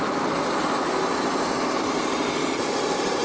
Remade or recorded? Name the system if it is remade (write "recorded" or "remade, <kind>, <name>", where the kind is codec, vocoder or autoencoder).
recorded